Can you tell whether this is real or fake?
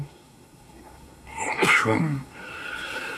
fake